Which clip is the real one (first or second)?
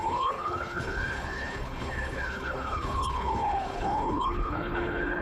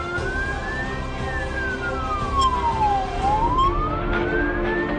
second